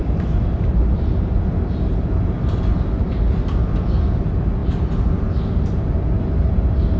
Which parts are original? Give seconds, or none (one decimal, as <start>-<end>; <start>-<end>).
0.0-7.0